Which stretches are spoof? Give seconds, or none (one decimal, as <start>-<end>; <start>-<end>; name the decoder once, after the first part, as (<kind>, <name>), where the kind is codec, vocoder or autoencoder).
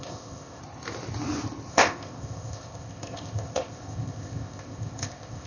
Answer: 0.0-0.6 (codec, ZipCodec); 1.7-5.5